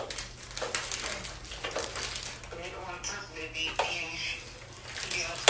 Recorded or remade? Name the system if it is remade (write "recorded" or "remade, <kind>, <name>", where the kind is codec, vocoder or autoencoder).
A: recorded